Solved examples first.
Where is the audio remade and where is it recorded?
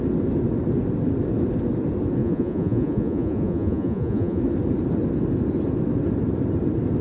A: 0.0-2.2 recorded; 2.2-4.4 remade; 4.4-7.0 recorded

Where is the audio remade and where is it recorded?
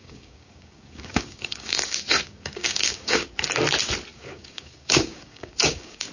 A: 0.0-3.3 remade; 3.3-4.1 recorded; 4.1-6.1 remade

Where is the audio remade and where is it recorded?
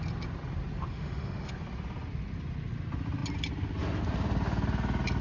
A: 0.0-0.9 recorded; 0.9-1.5 remade; 1.5-5.2 recorded